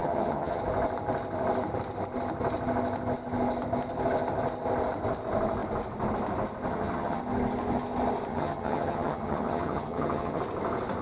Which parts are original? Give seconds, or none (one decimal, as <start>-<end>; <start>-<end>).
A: 0.6-6.7; 7.2-8.3; 10.4-11.0